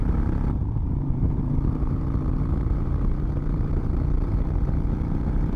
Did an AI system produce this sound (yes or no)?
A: yes